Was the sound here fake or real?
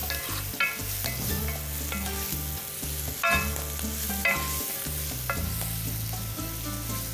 real